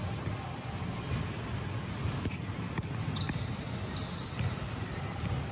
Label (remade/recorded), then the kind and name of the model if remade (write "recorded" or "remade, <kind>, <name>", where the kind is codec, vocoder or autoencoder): recorded